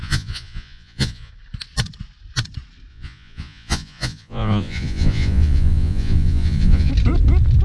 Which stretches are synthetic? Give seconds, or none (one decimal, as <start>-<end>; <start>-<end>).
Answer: 0.0-1.3; 2.9-6.9